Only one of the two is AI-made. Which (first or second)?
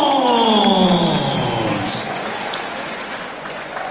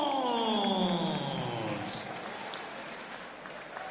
first